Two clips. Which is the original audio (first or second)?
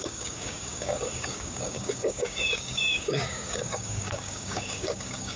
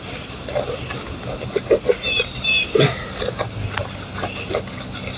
second